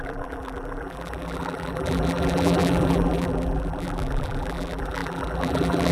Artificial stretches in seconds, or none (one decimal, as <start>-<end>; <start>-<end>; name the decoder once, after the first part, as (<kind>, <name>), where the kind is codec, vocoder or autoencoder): 0.0-5.9 (vocoder, BigVGAN v2)